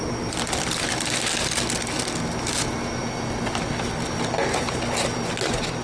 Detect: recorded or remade recorded